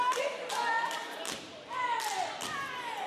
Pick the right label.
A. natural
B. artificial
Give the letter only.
A